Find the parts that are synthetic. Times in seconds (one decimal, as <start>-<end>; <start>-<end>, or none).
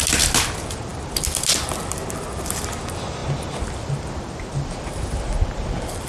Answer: none